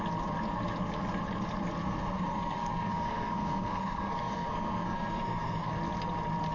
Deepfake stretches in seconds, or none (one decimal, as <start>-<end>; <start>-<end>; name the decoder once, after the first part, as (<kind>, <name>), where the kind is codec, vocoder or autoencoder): 1.8-5.7 (codec, SNAC)